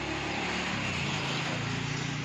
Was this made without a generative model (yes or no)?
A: yes